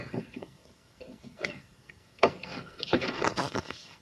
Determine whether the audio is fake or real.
fake